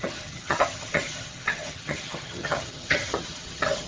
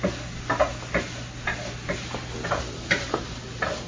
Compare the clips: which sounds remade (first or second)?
first